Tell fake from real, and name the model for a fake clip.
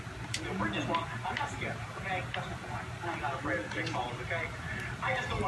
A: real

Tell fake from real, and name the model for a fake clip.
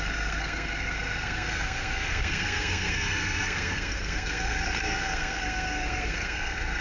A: fake, codec, SNAC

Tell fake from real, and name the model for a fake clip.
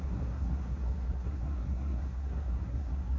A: fake, codec, SNAC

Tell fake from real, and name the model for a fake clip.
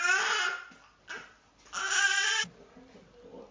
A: real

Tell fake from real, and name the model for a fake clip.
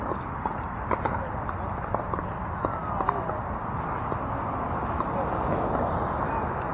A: real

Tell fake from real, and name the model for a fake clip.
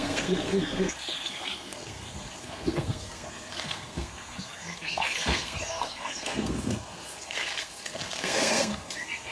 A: fake, codec, SNAC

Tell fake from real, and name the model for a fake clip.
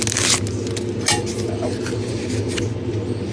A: real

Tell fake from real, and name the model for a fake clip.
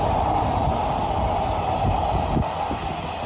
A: real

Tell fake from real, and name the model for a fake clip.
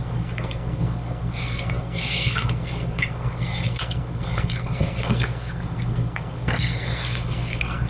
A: fake, codec, SNAC